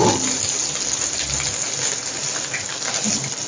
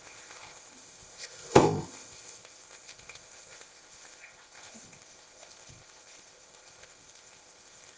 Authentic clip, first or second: first